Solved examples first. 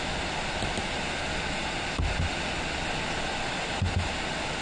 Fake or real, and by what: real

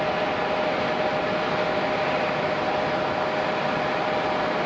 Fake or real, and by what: real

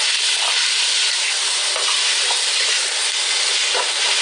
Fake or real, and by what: real